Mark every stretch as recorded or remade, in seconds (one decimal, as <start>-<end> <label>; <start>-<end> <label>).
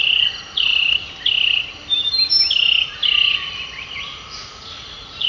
0.0-0.7 remade; 0.7-3.9 recorded; 3.9-5.3 remade